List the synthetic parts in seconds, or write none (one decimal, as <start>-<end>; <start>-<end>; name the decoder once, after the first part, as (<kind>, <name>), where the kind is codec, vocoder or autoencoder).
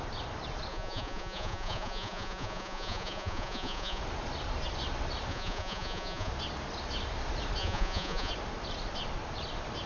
0.7-4.0 (vocoder, Vocos); 5.3-6.3; 7.6-8.3